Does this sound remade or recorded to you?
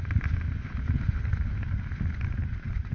recorded